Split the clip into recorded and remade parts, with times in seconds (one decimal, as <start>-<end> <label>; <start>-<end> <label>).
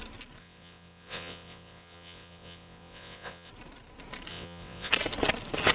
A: 0.0-0.4 recorded; 0.4-3.5 remade; 3.5-4.3 recorded; 4.3-4.9 remade; 4.9-5.7 recorded